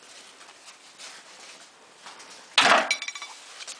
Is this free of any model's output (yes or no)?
yes